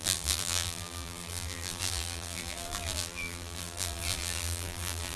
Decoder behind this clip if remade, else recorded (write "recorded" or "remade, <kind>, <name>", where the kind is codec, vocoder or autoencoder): remade, vocoder, BigVGAN v2